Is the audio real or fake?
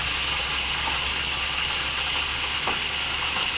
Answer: real